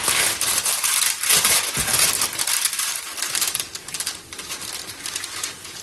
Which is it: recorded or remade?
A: recorded